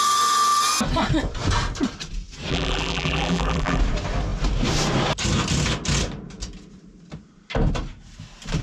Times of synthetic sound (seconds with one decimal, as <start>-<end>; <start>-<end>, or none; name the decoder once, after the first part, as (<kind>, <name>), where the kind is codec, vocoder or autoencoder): 2.5-3.8 (vocoder, BigVGAN v2)